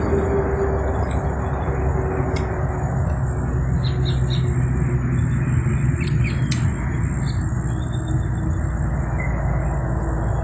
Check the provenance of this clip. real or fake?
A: real